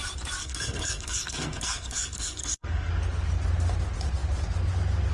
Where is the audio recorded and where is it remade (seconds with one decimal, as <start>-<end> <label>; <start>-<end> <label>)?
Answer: 0.0-0.4 recorded; 0.4-2.9 remade; 2.9-5.1 recorded